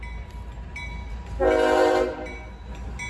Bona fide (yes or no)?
yes